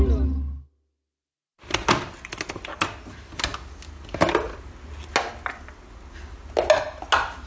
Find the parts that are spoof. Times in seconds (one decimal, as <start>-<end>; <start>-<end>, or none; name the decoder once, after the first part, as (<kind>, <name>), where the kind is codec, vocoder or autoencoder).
none